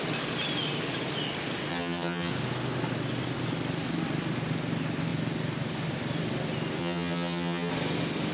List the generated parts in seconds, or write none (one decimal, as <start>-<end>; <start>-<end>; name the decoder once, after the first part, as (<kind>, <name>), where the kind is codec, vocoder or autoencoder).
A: 1.7-2.3 (vocoder, HiFi-GAN); 6.8-7.7